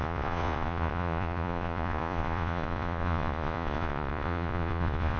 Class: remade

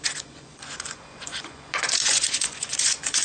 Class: remade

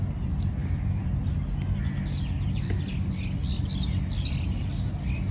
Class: recorded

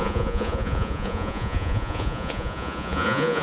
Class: remade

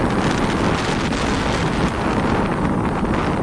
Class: recorded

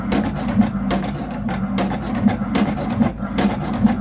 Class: recorded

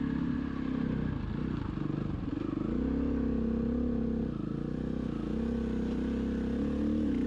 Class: recorded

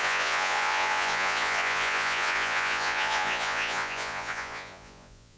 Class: remade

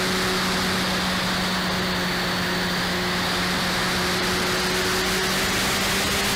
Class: recorded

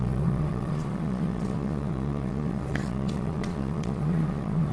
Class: remade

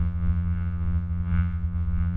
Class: remade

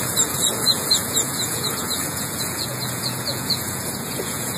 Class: remade